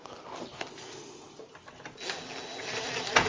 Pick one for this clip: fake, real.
real